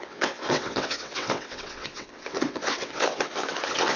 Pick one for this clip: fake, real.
fake